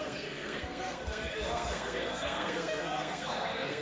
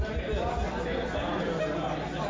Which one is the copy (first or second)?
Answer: first